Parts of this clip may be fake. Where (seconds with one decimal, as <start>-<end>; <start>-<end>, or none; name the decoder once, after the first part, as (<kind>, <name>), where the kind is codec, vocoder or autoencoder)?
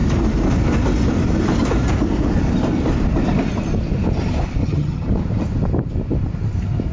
4.6-5.1 (vocoder, HiFi-GAN)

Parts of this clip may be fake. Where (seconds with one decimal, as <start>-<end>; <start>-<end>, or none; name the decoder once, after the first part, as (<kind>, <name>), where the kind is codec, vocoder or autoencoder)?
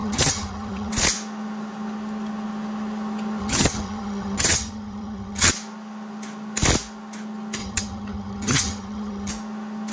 0.0-0.9 (vocoder, HiFi-GAN); 3.4-5.5; 7.6-9.3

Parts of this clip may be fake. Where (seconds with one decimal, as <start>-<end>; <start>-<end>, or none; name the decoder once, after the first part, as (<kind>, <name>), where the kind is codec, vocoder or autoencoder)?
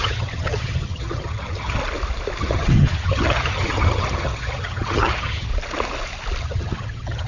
0.0-1.8 (vocoder, HiFi-GAN); 2.4-5.5; 6.4-7.3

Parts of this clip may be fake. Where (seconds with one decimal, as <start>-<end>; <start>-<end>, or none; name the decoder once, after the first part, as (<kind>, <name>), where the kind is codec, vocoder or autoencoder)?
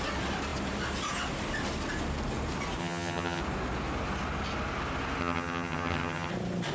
2.8-3.4 (vocoder, HiFi-GAN); 5.2-6.3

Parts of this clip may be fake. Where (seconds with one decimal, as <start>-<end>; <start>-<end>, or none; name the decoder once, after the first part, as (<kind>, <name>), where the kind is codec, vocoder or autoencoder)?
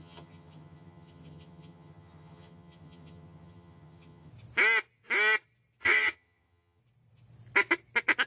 0.0-4.3 (vocoder, HiFi-GAN); 5.8-6.8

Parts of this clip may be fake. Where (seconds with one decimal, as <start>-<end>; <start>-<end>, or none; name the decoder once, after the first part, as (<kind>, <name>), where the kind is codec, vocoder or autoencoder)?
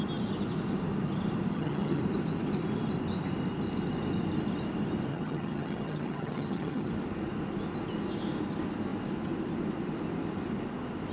1.5-2.0 (vocoder, HiFi-GAN); 5.1-6.9